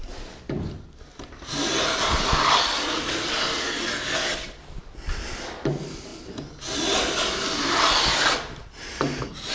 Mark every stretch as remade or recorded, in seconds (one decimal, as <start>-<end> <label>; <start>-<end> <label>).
0.0-9.5 recorded